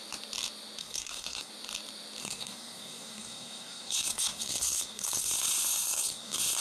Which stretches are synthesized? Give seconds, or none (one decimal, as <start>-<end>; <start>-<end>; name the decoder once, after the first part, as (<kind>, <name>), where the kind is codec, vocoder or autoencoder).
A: 0.8-1.5 (codec, SNAC); 2.2-6.6